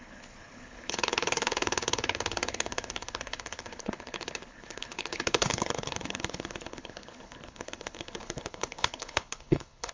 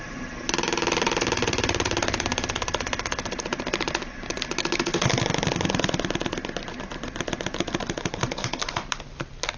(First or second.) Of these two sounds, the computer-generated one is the first